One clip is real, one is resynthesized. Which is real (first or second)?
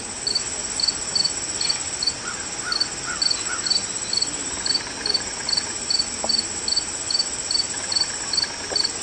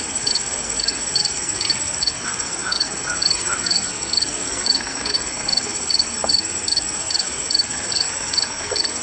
first